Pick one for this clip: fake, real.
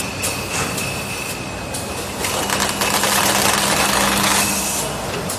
real